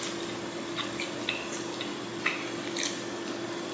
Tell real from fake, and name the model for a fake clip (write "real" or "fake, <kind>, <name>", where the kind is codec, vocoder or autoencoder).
real